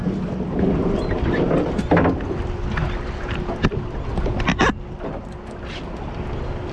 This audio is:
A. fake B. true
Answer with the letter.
B